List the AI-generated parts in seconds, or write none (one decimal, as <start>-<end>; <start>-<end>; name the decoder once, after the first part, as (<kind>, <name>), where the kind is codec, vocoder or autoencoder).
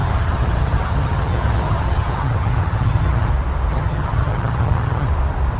0.0-3.3 (vocoder, HiFi-GAN); 3.7-5.1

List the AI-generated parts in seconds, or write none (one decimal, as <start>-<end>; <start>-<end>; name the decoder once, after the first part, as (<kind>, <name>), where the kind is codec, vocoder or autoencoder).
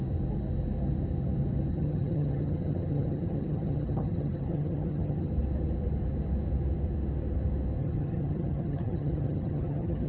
1.7-5.3 (vocoder, HiFi-GAN); 7.8-10.1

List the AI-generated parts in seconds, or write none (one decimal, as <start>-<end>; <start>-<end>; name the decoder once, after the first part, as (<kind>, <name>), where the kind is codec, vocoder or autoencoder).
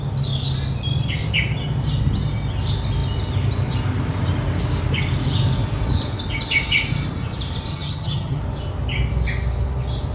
7.7-8.4 (vocoder, HiFi-GAN)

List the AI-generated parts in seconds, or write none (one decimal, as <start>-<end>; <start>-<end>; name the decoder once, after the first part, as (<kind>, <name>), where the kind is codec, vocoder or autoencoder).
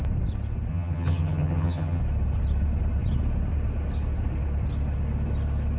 0.7-2.0 (vocoder, HiFi-GAN)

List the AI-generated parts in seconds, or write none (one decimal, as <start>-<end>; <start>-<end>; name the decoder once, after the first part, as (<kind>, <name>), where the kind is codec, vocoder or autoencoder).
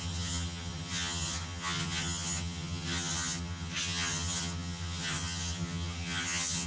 0.0-6.7 (vocoder, HiFi-GAN)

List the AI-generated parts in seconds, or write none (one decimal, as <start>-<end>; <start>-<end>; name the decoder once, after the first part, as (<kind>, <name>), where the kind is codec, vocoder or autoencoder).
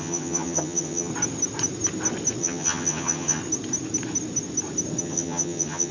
0.0-1.1 (vocoder, HiFi-GAN); 2.4-3.4; 5.0-5.9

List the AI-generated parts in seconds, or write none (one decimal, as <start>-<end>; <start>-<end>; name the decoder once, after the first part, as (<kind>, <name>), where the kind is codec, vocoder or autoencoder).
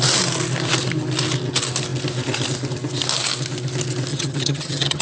4.1-5.0 (vocoder, HiFi-GAN)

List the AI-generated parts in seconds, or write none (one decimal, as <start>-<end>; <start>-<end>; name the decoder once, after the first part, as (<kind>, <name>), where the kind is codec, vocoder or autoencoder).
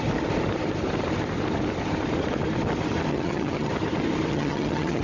3.1-3.7 (vocoder, HiFi-GAN); 4.3-5.0